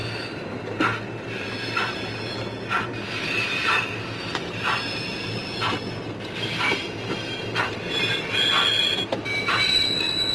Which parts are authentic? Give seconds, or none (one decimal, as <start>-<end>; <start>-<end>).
0.0-10.3